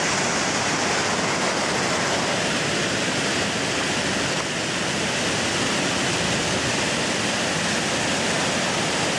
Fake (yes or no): no